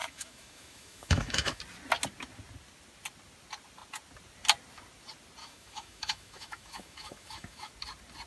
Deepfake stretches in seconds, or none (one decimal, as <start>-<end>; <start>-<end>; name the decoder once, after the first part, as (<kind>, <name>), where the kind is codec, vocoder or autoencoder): 0.0-1.6 (autoencoder, DAC-VAE); 5.4-7.7